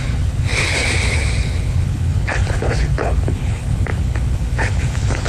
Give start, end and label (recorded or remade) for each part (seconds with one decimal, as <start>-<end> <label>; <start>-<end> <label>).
0.0-5.3 remade